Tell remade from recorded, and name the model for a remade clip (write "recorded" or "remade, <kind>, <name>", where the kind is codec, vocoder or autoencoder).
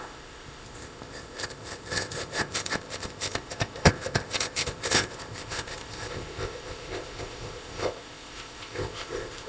remade, codec, ZipCodec